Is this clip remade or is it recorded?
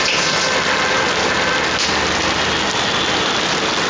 recorded